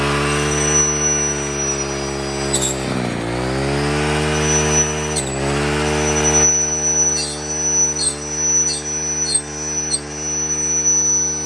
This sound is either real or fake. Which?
real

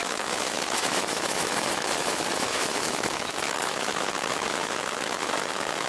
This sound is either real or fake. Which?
fake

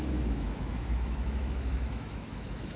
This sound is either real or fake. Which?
fake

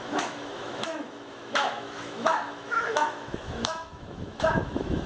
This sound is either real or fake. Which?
fake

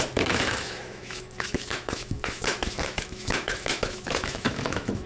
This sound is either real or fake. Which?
fake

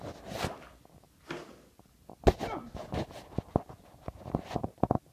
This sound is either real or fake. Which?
real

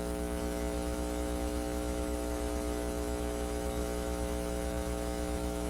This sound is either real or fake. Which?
fake